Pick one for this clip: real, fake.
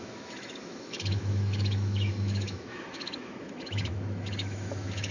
fake